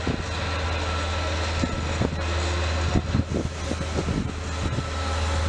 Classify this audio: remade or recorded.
recorded